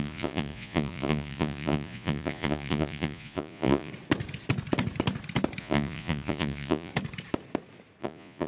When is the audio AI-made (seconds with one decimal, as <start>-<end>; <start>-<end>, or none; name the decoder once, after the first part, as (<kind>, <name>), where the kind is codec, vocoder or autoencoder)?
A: 0.0-3.9 (vocoder, Vocos); 5.6-6.9; 8.0-8.5